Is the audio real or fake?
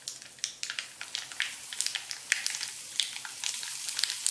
real